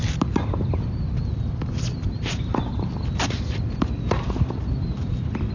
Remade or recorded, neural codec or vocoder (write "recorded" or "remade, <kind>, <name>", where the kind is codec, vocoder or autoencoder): recorded